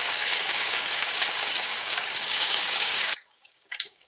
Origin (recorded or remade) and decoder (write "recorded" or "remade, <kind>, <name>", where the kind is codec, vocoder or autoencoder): remade, codec, DAC